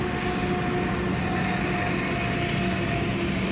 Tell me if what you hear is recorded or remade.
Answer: recorded